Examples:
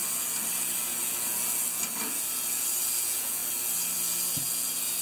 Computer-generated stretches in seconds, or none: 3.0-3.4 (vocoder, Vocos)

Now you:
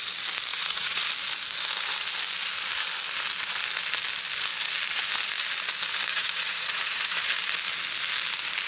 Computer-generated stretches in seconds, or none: 0.5-1.0 (vocoder, Vocos); 6.1-7.2

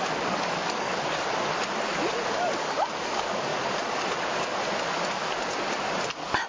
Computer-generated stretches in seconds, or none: 0.0-0.9 (codec, DAC); 2.3-3.5

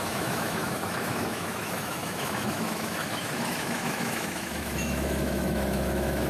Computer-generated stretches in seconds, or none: 0.0-6.3 (autoencoder, DAC-VAE)

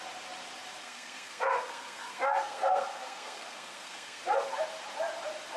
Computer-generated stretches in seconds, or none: 0.8-4.2 (codec, SNAC)

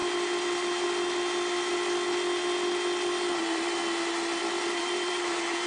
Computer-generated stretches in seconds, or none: 3.4-3.8 (vocoder, BigVGAN v2); 4.4-5.7

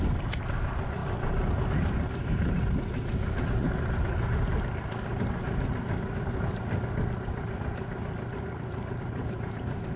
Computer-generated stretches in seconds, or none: none

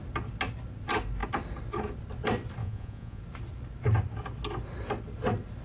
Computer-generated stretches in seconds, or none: 2.6-3.2 (vocoder, Vocos)